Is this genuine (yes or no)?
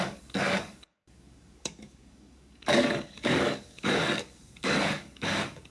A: no